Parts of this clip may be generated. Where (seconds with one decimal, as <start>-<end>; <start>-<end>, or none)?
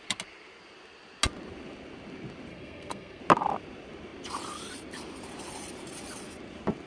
2.5-3.2